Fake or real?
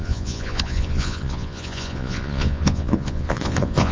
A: fake